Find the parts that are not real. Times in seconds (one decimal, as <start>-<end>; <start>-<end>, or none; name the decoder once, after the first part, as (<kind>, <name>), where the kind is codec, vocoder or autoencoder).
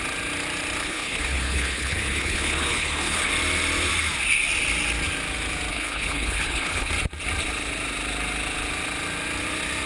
0.8-3.3 (codec, HILCodec); 5.7-6.9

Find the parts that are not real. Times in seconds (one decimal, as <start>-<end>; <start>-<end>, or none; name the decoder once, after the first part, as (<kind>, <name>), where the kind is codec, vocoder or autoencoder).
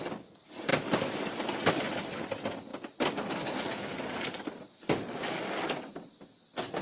0.0-2.7 (vocoder, BigVGAN v2); 4.1-6.8